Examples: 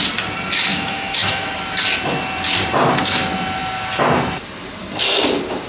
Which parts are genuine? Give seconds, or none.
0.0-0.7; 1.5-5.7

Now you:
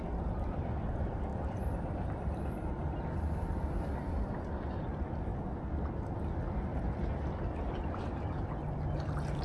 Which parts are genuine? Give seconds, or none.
0.0-9.4

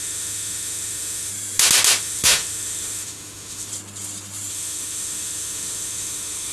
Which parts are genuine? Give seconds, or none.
1.3-2.0; 3.7-4.5

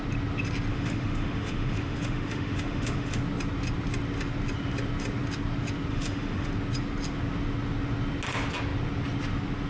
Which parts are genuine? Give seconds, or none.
0.0-0.7; 3.2-5.9; 6.5-9.7

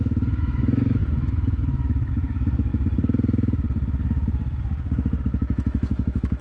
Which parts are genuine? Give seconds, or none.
2.7-5.2

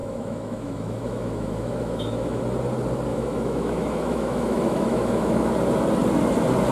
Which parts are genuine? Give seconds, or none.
2.4-3.1; 5.5-6.7

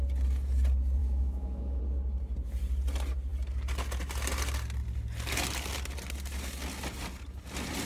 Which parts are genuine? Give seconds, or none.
0.0-1.0; 1.8-7.9

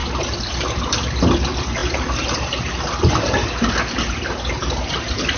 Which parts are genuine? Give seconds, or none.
0.0-5.4